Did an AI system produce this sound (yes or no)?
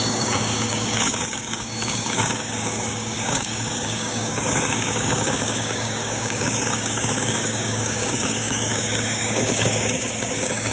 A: yes